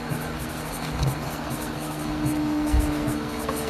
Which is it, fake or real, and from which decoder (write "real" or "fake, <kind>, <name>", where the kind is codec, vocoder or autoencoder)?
fake, codec, SNAC